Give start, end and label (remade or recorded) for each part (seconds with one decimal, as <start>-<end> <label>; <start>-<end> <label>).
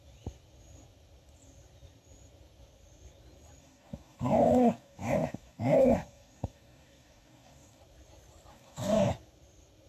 0.0-3.6 recorded; 3.6-7.8 remade; 7.8-8.5 recorded; 8.5-9.1 remade; 9.1-9.9 recorded